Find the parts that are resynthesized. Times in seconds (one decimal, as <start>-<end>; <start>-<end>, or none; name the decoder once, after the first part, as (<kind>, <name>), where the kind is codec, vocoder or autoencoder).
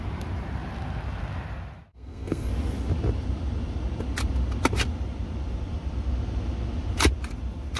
1.9-2.5 (codec, SNAC)